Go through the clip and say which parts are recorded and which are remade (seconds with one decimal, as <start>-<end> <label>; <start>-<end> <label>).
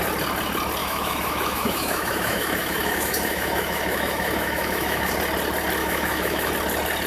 0.0-0.8 recorded; 0.8-5.1 remade; 5.1-5.8 recorded; 5.8-6.5 remade; 6.5-7.1 recorded